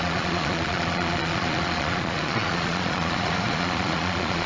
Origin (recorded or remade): remade